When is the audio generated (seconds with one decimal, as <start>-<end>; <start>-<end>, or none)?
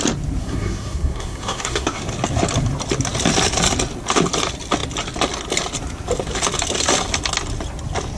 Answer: 0.4-2.0